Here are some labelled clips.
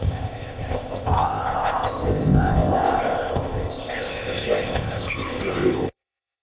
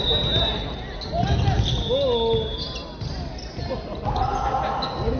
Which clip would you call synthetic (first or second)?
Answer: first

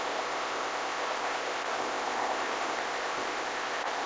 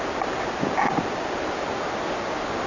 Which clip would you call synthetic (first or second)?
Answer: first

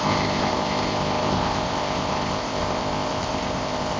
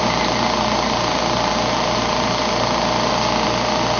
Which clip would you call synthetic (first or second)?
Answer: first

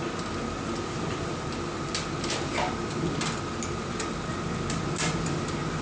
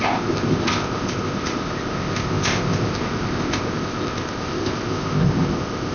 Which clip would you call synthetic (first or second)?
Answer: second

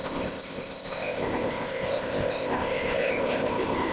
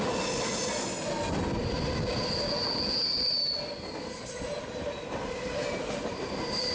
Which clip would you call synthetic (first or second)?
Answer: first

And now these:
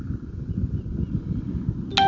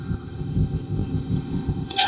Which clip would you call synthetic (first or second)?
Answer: second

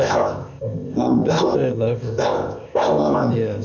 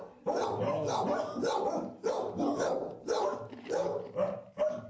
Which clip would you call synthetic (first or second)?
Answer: first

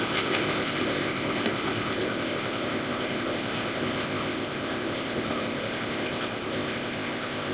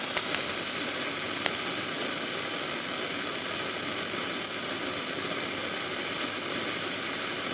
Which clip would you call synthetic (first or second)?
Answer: first